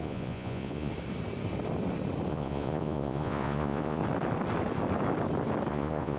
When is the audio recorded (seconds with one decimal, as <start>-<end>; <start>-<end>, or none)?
0.9-2.3; 4.0-5.7